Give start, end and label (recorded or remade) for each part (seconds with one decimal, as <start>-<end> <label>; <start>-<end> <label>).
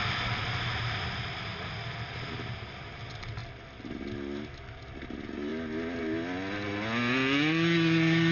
0.0-8.3 recorded